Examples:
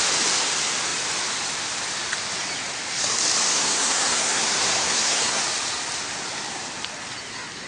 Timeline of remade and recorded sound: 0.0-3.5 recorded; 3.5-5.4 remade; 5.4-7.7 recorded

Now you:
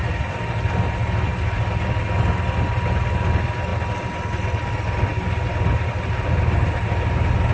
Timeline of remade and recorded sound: 0.0-7.5 recorded

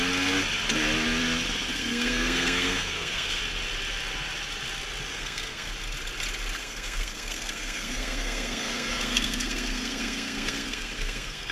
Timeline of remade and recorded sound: 0.0-1.7 recorded; 1.7-3.4 remade; 3.4-5.1 recorded; 5.1-5.7 remade; 5.7-6.6 recorded; 6.6-11.5 remade

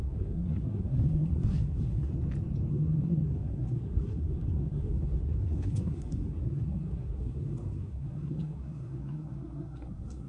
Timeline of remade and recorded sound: 0.0-2.1 remade; 2.1-2.7 recorded; 2.7-10.3 remade

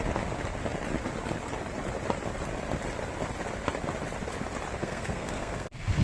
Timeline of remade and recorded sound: 0.0-4.8 recorded; 4.8-6.0 remade

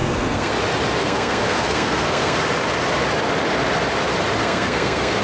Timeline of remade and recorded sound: 0.0-0.5 remade; 0.5-1.0 recorded; 1.0-2.4 remade; 2.4-4.4 recorded; 4.4-5.2 remade